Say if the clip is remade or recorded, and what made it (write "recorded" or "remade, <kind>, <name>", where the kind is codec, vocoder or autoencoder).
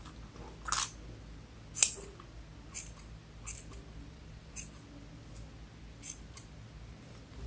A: recorded